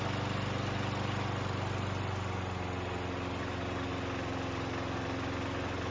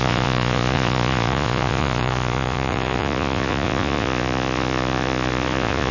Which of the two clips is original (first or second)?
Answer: first